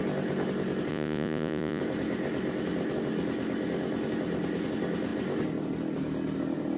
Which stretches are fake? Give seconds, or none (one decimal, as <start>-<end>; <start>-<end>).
0.9-1.8